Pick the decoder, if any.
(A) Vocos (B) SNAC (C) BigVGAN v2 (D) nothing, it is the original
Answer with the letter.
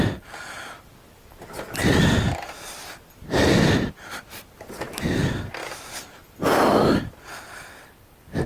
D